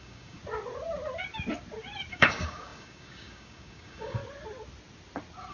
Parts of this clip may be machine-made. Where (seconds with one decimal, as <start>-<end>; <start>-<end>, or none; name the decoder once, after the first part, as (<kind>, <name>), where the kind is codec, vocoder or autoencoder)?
0.0-0.4 (codec, DAC); 2.1-4.2